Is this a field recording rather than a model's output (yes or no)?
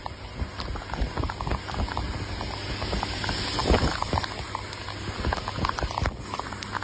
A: yes